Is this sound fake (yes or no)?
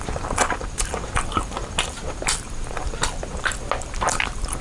no